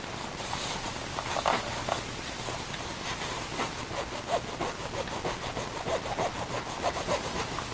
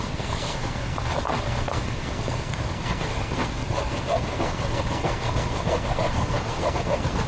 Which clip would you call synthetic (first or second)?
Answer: second